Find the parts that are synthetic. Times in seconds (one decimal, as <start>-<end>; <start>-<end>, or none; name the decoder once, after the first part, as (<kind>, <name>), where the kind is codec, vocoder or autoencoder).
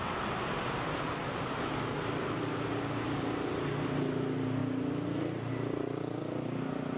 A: none